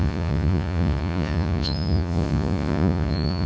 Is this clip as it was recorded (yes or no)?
no